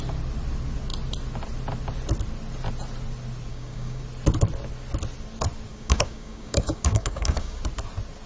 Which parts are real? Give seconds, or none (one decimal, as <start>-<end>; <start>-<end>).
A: 0.0-3.5; 4.0-5.7; 7.6-8.3